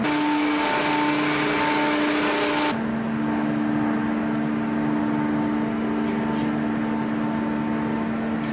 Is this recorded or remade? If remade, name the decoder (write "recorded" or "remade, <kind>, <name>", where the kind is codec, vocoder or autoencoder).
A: recorded